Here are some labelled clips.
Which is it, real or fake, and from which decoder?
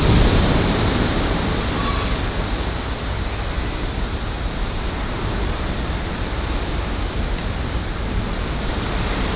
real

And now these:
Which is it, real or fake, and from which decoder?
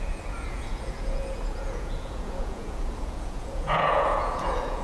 fake, vocoder, Vocos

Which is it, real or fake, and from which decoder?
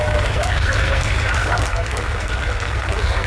fake, codec, SNAC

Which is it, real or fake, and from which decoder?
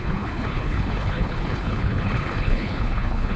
fake, codec, HILCodec